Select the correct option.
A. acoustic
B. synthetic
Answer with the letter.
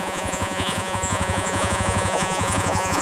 B